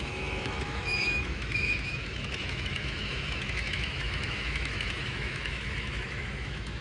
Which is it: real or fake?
fake